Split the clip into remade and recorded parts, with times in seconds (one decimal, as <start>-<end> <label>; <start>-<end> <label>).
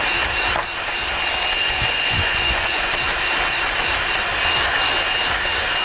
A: 0.0-1.6 recorded; 1.6-2.9 remade; 2.9-5.8 recorded